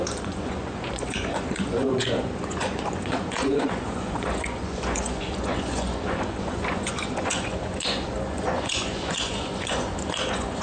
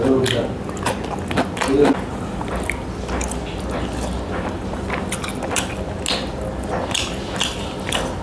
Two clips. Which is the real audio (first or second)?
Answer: second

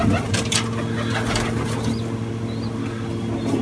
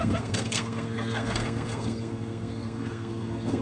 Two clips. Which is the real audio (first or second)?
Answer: first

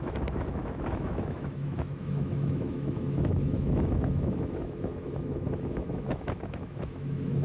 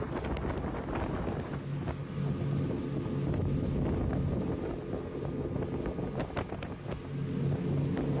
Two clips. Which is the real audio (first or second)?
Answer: second